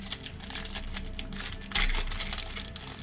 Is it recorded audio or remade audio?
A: recorded